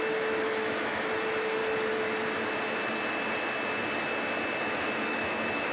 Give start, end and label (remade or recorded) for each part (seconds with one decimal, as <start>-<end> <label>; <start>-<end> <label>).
0.0-1.6 remade; 1.6-4.6 recorded; 4.6-5.7 remade